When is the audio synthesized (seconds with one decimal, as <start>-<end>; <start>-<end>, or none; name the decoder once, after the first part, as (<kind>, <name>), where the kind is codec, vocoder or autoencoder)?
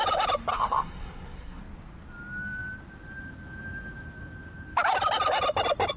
0.5-1.6 (codec, SNAC)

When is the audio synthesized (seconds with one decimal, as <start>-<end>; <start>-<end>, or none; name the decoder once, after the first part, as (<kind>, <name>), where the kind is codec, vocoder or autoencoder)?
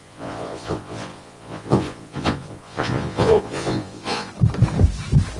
0.0-4.3 (vocoder, Vocos)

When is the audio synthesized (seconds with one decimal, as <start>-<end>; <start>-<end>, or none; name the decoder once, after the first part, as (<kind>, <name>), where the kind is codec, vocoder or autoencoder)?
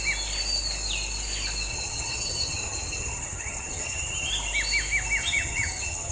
1.7-4.3 (vocoder, HiFi-GAN); 5.2-6.1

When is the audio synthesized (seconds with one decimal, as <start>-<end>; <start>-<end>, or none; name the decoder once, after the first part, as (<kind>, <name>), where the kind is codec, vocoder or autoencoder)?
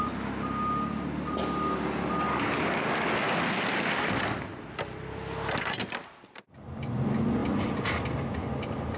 none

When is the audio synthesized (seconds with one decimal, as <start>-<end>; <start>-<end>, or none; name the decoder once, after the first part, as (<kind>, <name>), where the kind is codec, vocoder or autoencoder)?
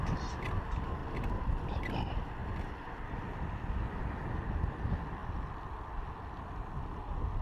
0.0-1.0 (vocoder, BigVGAN v2); 1.6-2.4; 4.6-5.2; 6.4-7.4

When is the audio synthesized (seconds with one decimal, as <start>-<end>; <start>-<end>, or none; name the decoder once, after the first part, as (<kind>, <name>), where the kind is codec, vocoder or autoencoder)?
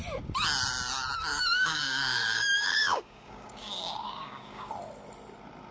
1.3-4.7 (codec, DAC)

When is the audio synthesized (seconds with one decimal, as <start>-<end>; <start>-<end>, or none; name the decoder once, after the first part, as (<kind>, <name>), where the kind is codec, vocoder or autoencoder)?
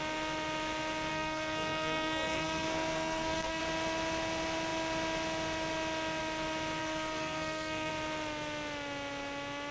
1.1-3.6 (codec, SNAC); 6.8-7.9